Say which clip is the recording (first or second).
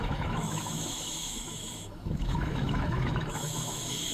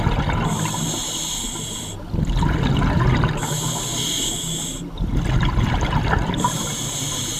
second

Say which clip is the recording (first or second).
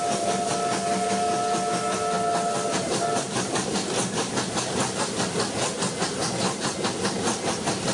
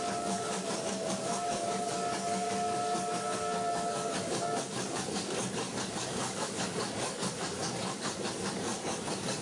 first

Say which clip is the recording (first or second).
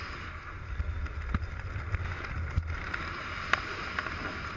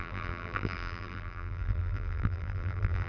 first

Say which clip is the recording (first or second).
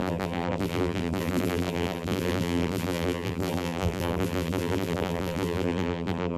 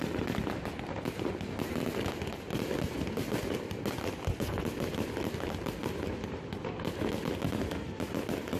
second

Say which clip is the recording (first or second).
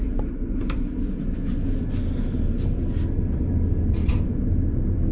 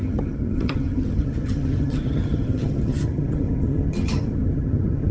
first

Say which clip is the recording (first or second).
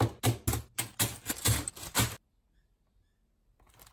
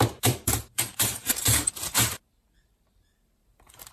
first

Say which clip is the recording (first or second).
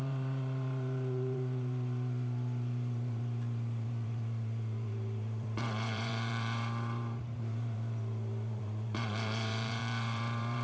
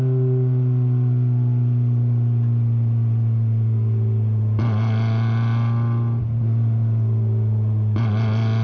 second